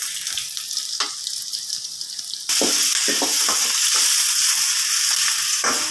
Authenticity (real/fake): real